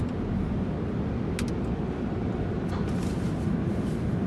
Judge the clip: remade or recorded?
recorded